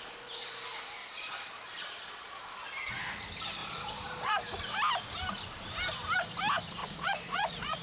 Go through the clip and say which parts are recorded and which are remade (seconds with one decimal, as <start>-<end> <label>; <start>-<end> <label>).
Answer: 0.0-1.0 recorded; 1.0-2.3 remade; 2.3-3.6 recorded; 3.6-4.3 remade; 4.3-6.8 recorded; 6.8-7.8 remade